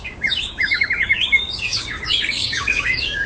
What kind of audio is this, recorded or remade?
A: remade